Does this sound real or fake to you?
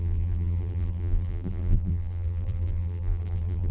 fake